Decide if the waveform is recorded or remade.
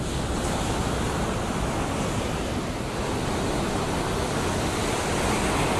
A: recorded